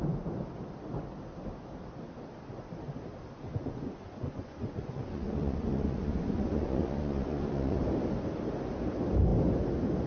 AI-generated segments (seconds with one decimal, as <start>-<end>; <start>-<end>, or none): 3.5-7.8